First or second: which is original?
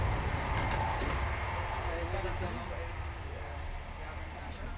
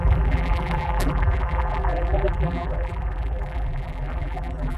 first